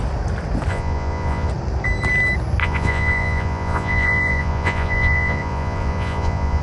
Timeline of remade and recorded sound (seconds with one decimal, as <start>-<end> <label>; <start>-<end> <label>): 0.0-0.7 recorded; 0.7-1.5 remade; 1.5-2.6 recorded; 2.6-6.6 remade